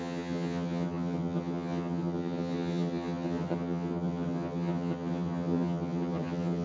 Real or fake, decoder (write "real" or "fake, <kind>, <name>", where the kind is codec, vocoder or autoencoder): fake, vocoder, HiFi-GAN